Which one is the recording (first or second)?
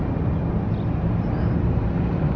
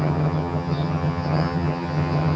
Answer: first